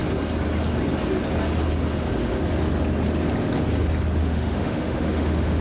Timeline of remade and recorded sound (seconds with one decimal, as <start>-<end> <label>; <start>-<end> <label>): 0.0-4.2 recorded; 4.2-5.6 remade